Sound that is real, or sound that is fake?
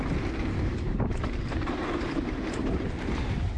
fake